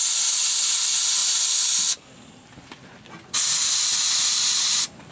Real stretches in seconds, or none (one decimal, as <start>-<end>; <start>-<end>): 0.0-5.1